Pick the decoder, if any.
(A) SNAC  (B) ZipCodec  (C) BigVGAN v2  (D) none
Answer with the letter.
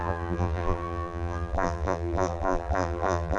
C